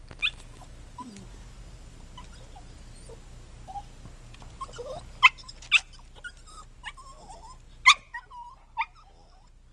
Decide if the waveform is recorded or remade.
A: recorded